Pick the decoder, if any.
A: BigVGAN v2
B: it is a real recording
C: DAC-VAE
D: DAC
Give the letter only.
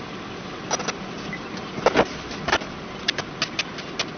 B